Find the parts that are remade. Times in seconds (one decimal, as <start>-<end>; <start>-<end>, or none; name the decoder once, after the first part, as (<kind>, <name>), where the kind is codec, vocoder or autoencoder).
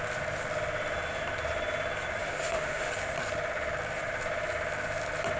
2.2-2.9 (autoencoder, DAC-VAE)